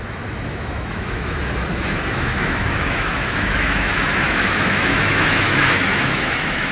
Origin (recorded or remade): remade